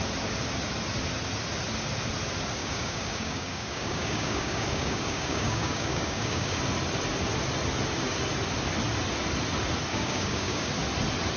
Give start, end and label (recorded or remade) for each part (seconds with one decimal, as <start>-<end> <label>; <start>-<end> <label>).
0.0-2.6 recorded; 2.6-6.6 remade; 6.6-9.9 recorded; 9.9-10.7 remade; 10.7-11.4 recorded